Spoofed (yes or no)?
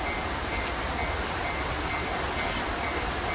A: no